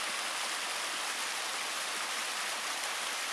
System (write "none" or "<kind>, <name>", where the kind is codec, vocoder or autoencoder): none